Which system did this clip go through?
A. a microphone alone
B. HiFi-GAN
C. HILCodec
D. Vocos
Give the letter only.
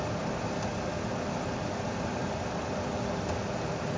A